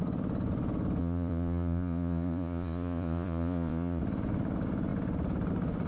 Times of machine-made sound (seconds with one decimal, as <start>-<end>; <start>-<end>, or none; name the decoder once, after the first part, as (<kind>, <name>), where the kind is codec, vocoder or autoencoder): 1.0-4.0 (vocoder, Vocos)

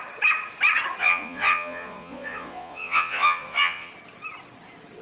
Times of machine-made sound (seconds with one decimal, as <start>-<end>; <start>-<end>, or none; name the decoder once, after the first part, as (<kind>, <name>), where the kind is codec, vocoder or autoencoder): 1.0-3.9 (vocoder, Vocos)

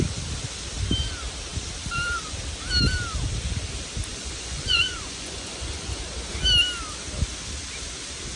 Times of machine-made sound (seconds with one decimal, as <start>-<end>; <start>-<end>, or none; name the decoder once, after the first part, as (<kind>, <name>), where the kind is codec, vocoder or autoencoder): 4.1-6.0 (vocoder, Vocos)

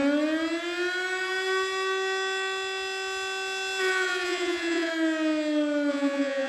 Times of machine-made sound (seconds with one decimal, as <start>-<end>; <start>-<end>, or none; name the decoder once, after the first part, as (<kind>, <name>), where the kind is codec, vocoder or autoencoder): 3.8-4.9 (vocoder, Vocos); 5.9-6.5

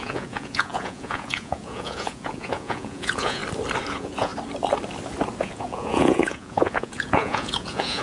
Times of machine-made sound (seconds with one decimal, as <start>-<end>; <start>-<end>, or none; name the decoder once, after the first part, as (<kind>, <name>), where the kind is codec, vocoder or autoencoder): 0.0-3.4 (vocoder, Vocos); 3.9-4.3; 5.4-8.0